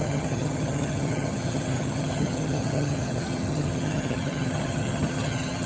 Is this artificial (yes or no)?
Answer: yes